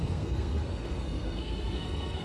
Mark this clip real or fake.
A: fake